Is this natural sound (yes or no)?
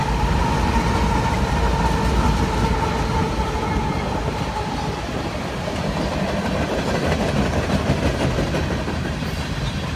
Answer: yes